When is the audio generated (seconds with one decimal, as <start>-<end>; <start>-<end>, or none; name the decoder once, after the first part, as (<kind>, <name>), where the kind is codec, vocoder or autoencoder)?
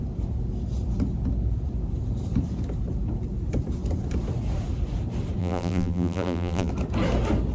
5.4-6.7 (vocoder, BigVGAN v2)